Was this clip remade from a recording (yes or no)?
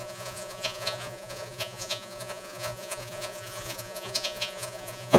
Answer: yes